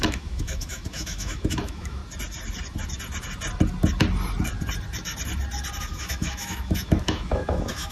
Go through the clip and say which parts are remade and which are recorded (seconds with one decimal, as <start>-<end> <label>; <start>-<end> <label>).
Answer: 0.0-2.0 remade; 2.0-5.8 recorded; 5.8-7.9 remade